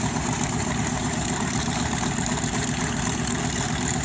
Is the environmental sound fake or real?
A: fake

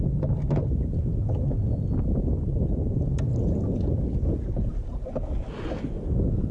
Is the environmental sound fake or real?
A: real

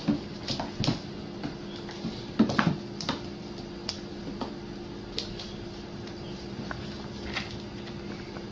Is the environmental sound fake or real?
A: real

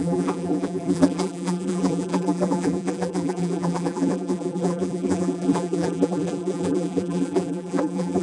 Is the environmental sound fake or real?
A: fake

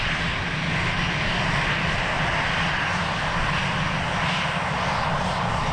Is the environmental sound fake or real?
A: real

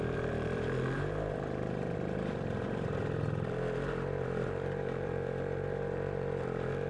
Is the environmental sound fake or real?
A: fake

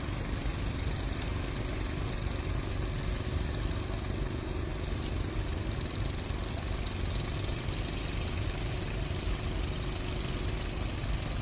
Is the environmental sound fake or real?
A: real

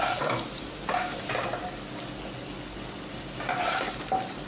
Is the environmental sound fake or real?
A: real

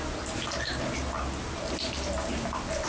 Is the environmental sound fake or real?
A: real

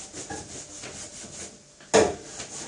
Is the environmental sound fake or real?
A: real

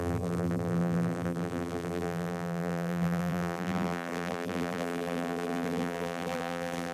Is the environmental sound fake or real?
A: fake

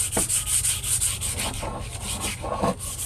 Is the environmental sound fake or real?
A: real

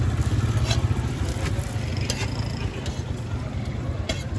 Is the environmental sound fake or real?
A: real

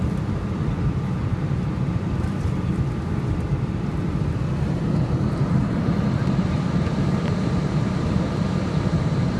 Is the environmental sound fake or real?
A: fake